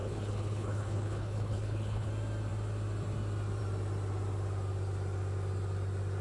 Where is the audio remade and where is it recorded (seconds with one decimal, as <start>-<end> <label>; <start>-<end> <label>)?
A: 0.0-2.1 remade; 2.1-6.2 recorded